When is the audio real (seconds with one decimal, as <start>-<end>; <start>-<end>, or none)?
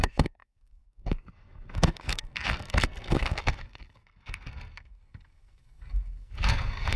none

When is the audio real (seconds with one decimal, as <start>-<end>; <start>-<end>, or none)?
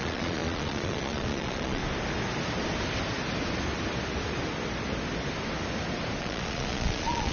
1.8-6.2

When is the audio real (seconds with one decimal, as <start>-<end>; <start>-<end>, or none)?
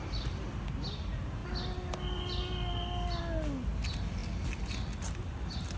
0.0-5.8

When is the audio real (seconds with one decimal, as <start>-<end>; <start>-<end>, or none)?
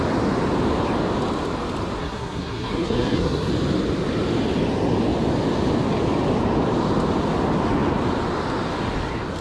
0.0-2.0; 3.5-9.4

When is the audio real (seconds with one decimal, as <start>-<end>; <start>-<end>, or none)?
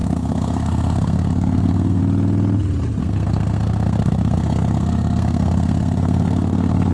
2.0-3.0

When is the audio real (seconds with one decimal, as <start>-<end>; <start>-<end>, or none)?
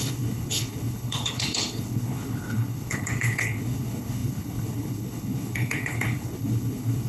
none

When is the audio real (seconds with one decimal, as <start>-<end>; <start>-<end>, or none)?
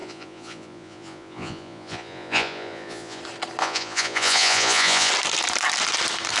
3.2-3.6; 5.1-6.4